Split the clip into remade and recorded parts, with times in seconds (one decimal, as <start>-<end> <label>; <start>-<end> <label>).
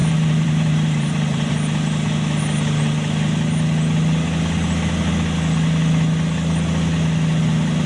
0.0-1.5 remade; 1.5-7.9 recorded